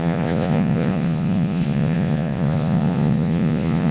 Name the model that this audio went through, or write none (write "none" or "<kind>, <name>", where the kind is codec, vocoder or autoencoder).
vocoder, Vocos